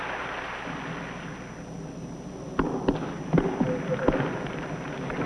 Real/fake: real